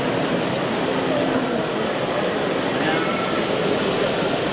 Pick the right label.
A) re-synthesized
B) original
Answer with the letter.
B